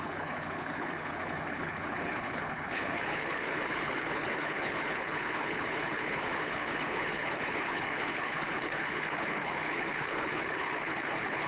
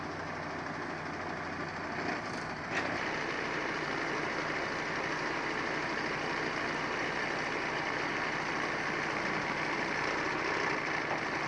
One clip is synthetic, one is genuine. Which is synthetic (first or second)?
first